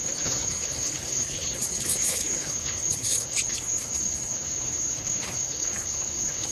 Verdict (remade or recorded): remade